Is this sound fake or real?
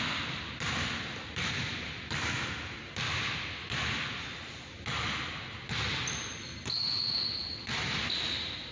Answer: real